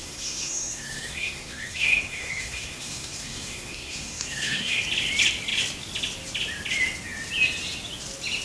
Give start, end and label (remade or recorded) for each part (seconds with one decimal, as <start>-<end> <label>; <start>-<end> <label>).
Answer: 0.0-4.8 remade; 4.8-8.4 recorded